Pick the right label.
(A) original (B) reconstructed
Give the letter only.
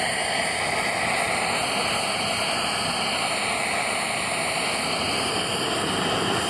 A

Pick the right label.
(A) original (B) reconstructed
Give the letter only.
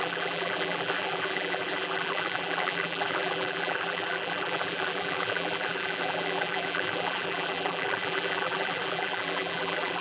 B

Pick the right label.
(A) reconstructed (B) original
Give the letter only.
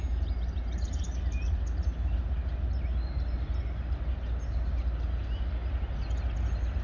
B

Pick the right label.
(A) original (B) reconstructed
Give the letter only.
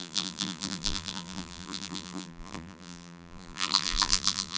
B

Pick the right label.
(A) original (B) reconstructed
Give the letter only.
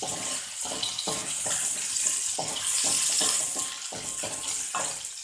A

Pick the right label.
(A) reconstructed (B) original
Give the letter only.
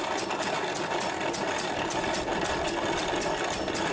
B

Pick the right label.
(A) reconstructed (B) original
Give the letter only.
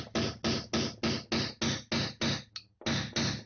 B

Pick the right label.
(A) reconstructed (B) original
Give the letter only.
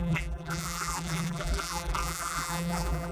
A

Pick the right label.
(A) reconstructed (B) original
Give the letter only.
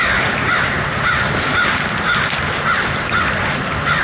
B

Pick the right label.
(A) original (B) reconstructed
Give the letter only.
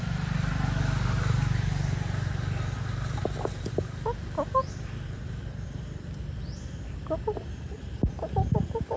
A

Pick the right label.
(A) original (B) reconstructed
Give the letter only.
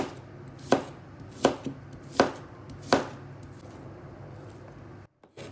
A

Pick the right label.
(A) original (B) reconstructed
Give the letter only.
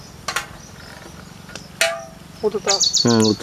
A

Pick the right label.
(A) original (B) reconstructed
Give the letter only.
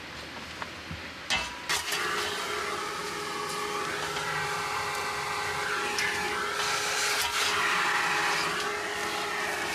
A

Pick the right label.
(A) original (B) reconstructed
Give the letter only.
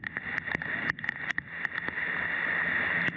A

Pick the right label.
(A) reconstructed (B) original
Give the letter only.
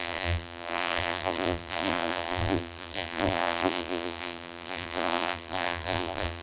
A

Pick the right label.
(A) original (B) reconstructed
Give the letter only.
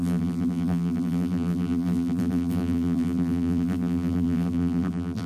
B